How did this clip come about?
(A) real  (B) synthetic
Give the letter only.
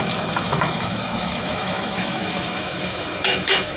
B